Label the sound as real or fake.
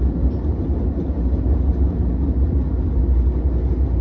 real